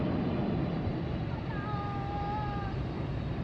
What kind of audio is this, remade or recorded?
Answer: recorded